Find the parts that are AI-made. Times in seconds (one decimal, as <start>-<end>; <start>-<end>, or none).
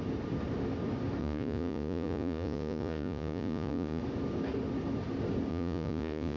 1.2-4.0; 5.5-6.4